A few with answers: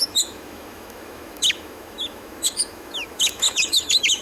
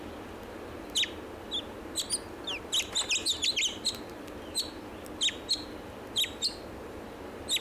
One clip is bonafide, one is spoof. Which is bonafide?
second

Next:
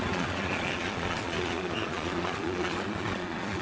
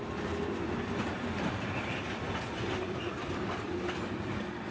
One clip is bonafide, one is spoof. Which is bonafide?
second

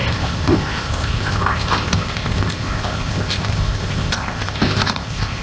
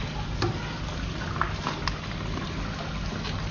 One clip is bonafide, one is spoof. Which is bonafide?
second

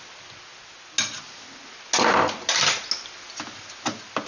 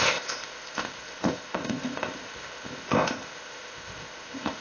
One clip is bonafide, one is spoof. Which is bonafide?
first